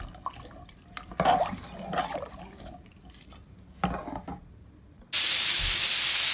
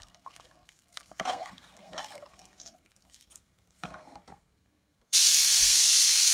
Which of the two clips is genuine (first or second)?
first